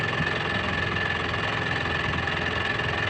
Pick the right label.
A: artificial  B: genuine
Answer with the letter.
B